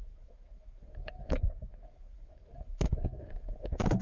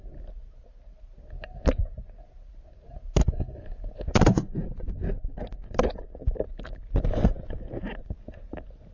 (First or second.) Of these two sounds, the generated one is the first